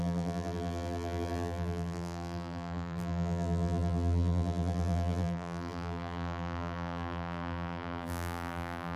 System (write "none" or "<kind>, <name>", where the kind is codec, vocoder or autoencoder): vocoder, BigVGAN v2